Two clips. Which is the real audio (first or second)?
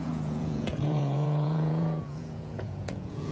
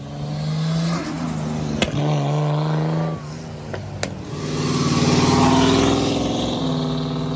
second